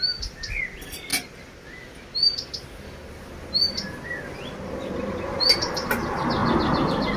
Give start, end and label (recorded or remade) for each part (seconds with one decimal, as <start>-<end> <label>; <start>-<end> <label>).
0.0-7.2 recorded